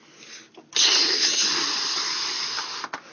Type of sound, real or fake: real